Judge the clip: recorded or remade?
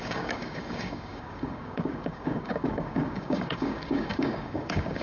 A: remade